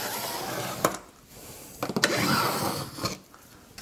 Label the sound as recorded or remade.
recorded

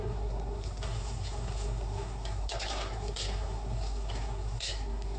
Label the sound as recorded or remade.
remade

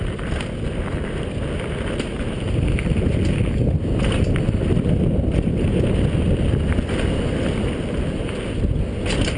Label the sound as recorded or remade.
recorded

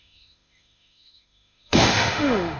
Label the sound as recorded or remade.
remade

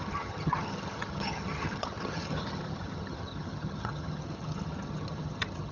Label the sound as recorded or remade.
remade